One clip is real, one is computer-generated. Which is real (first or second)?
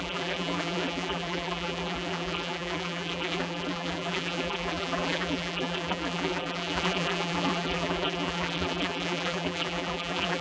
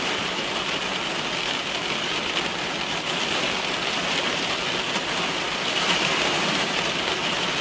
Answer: second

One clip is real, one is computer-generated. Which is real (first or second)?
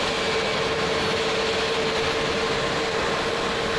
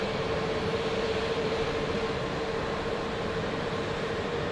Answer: first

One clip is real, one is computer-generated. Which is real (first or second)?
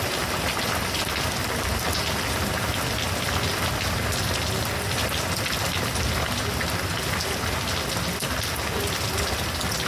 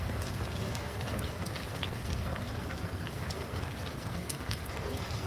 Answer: first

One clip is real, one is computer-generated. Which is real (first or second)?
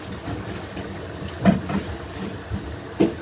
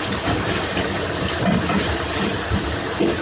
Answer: first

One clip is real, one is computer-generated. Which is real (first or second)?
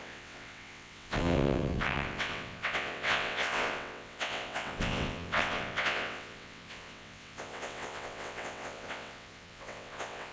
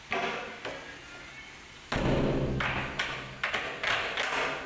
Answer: second